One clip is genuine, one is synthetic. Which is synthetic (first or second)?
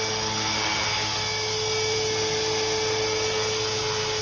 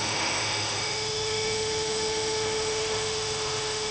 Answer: second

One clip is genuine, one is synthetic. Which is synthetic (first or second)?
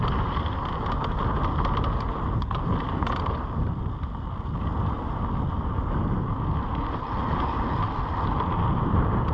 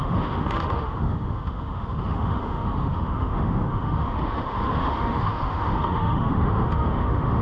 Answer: second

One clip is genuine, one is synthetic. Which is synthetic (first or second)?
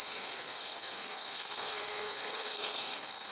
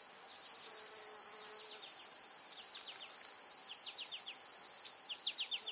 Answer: first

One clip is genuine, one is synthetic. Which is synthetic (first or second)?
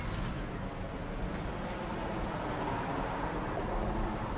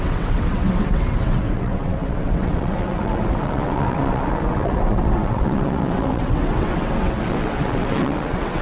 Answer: second